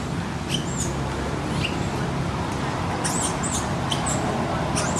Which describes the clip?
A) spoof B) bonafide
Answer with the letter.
B